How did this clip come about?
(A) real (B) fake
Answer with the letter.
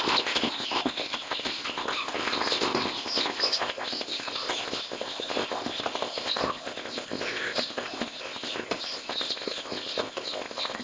B